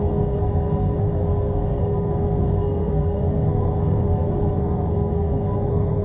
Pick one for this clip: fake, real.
fake